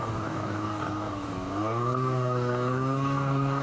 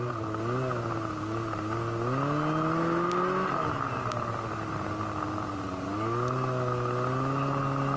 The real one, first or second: second